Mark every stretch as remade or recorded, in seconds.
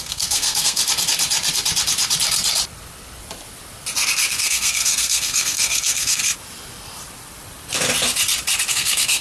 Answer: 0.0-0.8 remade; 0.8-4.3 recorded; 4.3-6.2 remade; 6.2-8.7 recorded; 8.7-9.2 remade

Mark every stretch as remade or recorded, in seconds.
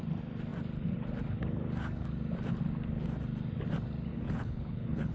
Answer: 0.0-4.1 recorded; 4.1-5.1 remade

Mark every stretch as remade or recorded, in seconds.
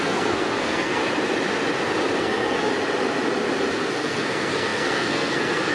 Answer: 0.0-1.0 remade; 1.0-2.2 recorded; 2.2-2.7 remade; 2.7-3.9 recorded; 3.9-5.7 remade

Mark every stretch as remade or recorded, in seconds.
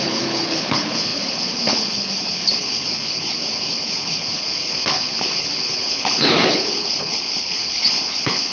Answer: 0.0-8.5 remade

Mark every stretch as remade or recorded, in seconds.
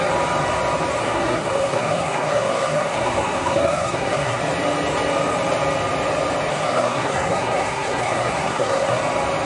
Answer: 0.0-1.0 recorded; 1.0-4.4 remade; 4.4-6.5 recorded; 6.5-9.0 remade; 9.0-9.5 recorded